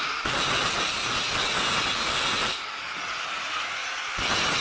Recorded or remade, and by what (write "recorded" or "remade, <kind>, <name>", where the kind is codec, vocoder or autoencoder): recorded